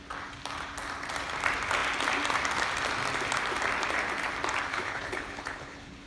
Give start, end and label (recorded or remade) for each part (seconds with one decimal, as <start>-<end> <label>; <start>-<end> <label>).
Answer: 0.0-4.7 recorded; 4.7-6.1 remade